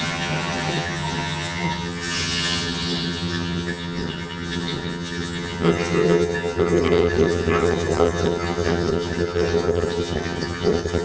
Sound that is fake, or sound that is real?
fake